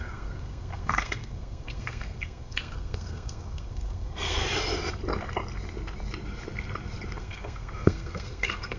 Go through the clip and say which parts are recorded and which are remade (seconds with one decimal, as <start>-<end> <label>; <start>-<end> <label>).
0.0-4.4 remade; 4.4-7.2 recorded; 7.2-8.8 remade